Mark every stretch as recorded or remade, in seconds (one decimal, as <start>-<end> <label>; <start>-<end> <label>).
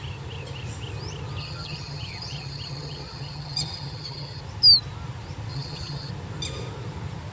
0.0-1.4 recorded; 1.4-4.4 remade; 4.4-5.5 recorded; 5.5-6.1 remade; 6.1-7.3 recorded